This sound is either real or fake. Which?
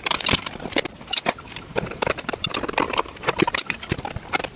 fake